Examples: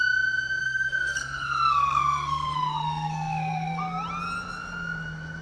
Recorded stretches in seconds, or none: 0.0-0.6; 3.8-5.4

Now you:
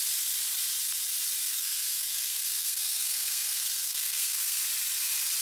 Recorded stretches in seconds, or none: 0.0-1.4; 4.6-5.4

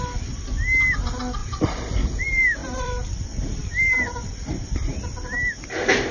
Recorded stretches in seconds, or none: 0.0-1.4; 2.2-2.6; 3.2-3.6; 4.9-6.1

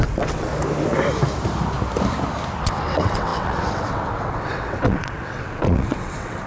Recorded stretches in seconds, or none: 0.5-2.6

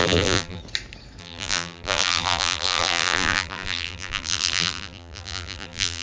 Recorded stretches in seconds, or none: 0.6-1.2